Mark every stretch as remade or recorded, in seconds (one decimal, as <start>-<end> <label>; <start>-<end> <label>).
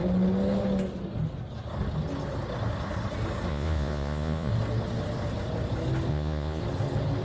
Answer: 0.0-3.5 recorded; 3.5-4.5 remade; 4.5-6.1 recorded; 6.1-6.6 remade; 6.6-7.2 recorded